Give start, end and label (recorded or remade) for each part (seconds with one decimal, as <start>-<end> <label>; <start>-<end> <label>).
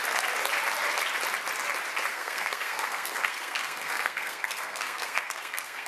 0.0-2.1 recorded; 2.1-5.9 remade